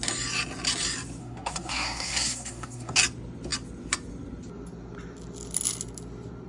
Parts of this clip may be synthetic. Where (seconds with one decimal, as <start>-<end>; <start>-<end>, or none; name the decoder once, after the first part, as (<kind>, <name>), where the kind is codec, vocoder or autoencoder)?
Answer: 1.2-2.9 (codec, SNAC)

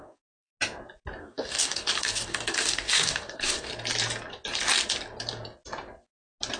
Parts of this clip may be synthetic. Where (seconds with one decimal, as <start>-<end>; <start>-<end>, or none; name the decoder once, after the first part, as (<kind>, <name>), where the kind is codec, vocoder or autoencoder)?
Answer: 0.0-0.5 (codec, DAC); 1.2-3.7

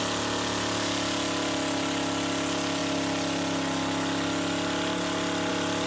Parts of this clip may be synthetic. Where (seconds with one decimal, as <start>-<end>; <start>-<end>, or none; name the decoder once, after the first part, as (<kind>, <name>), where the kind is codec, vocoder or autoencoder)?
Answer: none